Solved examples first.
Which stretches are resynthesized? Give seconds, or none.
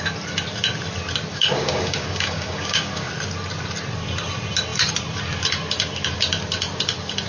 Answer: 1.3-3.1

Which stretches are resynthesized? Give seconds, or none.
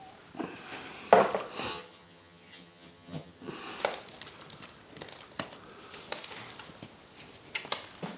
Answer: 1.7-3.5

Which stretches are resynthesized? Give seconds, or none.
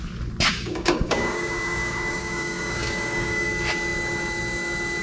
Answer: 0.5-3.5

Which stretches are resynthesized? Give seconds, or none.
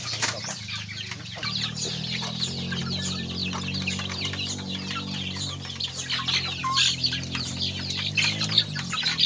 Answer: none